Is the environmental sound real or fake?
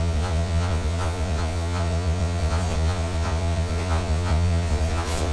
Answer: fake